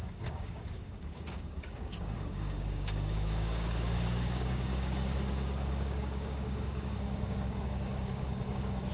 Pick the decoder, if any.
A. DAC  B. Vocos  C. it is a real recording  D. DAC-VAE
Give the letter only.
A